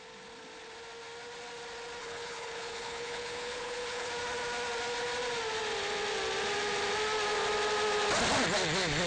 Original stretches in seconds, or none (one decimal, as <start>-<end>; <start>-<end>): 0.0-2.0; 4.1-9.1